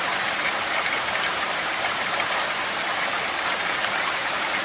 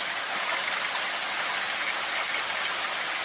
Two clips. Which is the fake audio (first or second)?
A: first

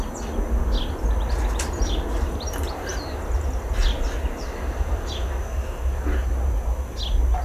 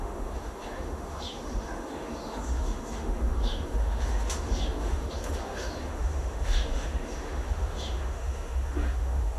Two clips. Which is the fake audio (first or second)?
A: second